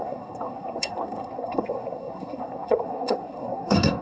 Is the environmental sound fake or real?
fake